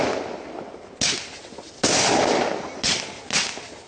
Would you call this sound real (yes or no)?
yes